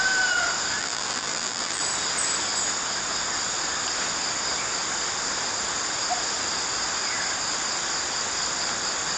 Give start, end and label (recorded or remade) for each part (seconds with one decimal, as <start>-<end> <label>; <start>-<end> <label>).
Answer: 0.0-0.8 recorded; 0.8-1.8 remade; 1.8-9.2 recorded